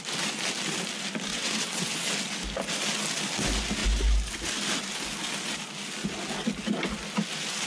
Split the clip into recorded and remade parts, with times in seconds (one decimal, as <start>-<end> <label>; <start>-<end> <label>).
0.0-1.3 recorded; 1.3-2.1 remade; 2.1-7.7 recorded